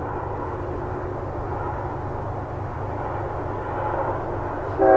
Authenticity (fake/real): real